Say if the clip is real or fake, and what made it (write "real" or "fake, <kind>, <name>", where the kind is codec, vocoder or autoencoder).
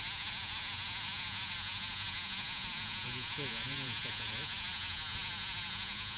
fake, vocoder, Vocos